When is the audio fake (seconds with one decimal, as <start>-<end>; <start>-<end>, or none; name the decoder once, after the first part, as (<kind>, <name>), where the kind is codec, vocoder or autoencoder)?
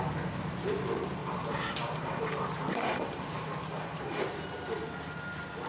1.2-4.2 (vocoder, BigVGAN v2)